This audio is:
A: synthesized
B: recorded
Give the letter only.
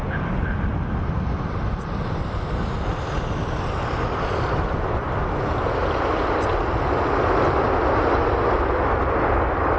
B